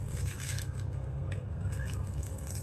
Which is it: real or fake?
fake